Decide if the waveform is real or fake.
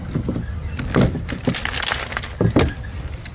real